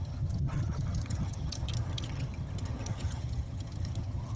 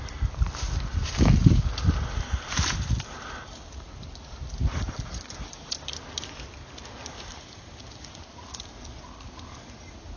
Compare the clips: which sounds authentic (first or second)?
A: second